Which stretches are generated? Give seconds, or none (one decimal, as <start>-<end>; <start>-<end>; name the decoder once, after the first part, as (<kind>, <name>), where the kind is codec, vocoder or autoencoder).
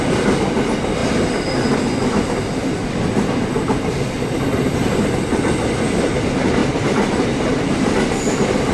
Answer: 1.0-1.6 (vocoder, BigVGAN v2); 6.6-7.9